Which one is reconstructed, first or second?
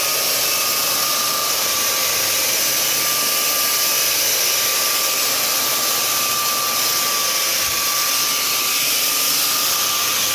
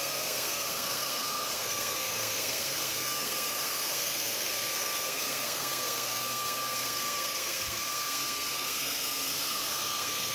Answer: second